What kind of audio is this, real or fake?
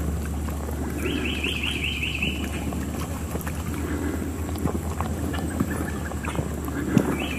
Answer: real